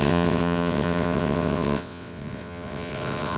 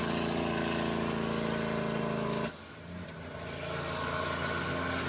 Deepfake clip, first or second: first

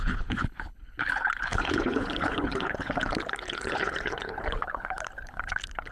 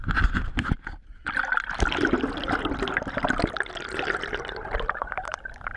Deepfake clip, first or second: first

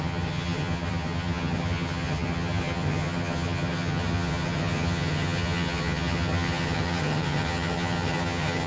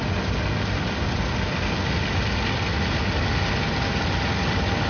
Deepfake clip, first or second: first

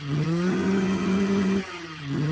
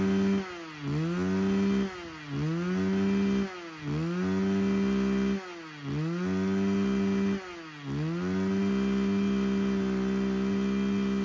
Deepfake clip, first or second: first